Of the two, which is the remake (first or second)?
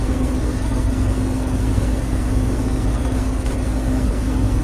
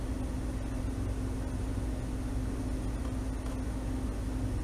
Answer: first